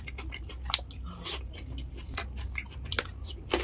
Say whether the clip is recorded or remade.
recorded